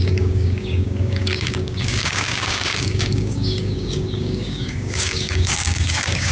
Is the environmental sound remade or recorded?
remade